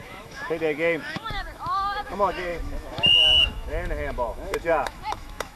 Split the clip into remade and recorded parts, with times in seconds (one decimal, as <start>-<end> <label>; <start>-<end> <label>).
0.0-5.6 remade